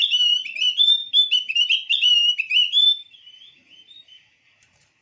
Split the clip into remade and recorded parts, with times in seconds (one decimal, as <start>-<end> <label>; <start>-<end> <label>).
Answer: 0.0-5.0 remade